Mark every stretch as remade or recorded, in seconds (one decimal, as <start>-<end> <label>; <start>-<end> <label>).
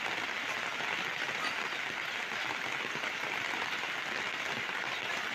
0.0-5.3 recorded